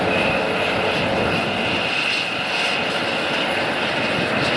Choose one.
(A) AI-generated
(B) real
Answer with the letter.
B